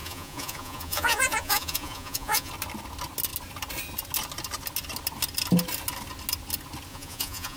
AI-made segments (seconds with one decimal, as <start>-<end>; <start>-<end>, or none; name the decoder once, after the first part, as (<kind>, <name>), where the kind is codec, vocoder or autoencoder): 0.0-2.5 (vocoder, Vocos); 6.9-7.6